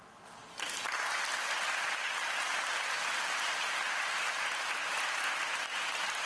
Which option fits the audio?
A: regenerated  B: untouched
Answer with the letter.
B